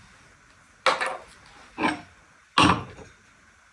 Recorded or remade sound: recorded